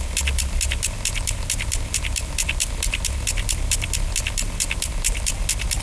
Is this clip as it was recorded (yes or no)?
yes